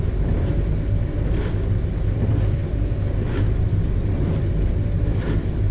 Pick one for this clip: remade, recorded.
remade